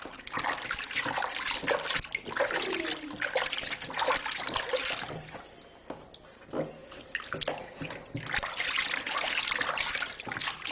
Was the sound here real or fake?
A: real